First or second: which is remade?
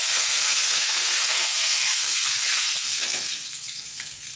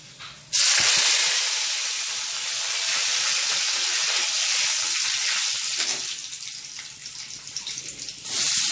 first